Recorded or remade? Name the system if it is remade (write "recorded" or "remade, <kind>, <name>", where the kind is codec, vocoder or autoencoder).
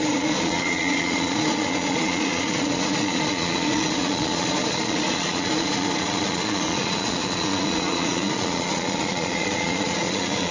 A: remade, vocoder, Vocos